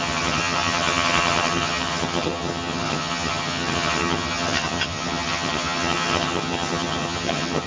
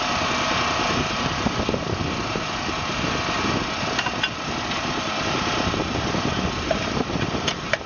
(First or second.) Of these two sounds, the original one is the second